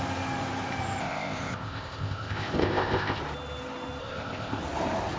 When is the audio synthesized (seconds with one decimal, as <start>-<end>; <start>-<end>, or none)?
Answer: 1.0-3.2; 4.0-4.6